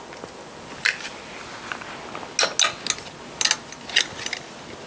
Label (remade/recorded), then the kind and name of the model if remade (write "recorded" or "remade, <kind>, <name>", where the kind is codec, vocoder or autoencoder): recorded